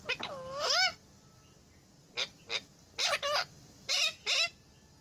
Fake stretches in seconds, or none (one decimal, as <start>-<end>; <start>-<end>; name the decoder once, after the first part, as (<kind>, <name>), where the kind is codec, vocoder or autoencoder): none